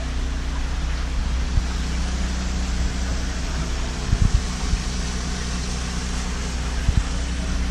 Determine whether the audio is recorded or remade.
recorded